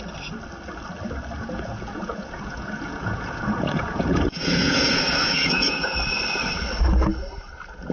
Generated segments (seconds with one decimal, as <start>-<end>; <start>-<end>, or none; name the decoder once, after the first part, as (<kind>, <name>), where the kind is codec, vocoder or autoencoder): 1.4-5.9 (vocoder, Vocos)